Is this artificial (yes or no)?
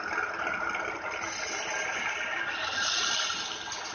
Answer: no